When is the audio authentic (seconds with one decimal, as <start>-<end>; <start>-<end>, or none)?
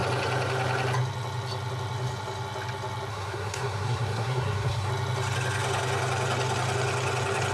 0.0-3.1; 4.9-7.5